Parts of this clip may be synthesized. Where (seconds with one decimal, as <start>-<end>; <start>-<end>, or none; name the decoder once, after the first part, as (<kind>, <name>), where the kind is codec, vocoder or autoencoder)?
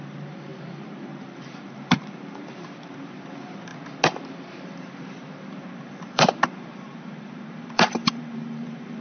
0.0-3.7 (vocoder, BigVGAN v2); 4.2-9.0